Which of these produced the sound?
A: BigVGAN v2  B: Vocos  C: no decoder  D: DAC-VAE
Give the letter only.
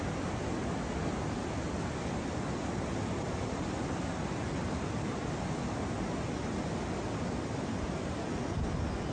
C